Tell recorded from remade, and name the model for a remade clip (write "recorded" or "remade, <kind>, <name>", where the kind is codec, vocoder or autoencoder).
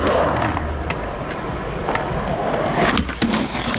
recorded